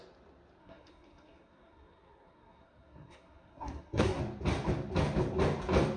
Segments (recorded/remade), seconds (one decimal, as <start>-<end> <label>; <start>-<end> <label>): 0.0-0.6 recorded; 0.6-4.2 remade; 4.2-6.0 recorded